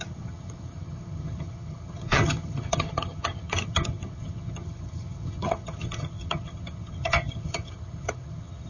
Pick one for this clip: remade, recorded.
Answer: remade